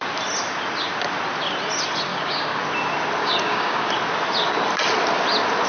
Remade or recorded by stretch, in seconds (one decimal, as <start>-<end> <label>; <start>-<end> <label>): 0.0-2.1 recorded; 2.1-2.6 remade; 2.6-3.2 recorded; 3.2-3.9 remade; 3.9-5.7 recorded